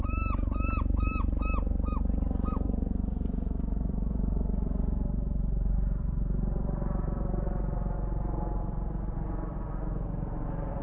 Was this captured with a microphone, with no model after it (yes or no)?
no